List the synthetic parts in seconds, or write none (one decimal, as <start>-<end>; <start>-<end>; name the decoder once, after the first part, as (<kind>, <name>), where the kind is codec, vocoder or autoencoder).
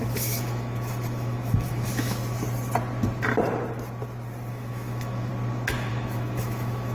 0.0-2.2 (autoencoder, DAC-VAE); 4.5-5.3; 5.9-6.9